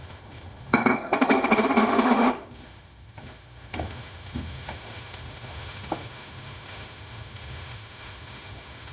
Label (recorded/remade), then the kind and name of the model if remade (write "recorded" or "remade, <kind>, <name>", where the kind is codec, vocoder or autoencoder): remade, autoencoder, DAC-VAE